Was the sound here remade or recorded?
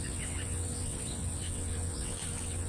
remade